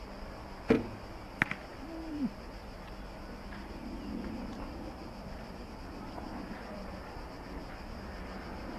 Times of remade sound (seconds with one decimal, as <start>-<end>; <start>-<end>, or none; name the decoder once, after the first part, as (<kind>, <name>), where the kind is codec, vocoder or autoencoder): none

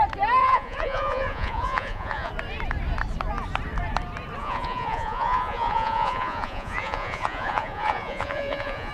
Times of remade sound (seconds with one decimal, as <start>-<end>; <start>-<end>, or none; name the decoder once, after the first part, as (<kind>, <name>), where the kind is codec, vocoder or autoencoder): 0.4-2.3 (vocoder, Vocos); 4.4-8.9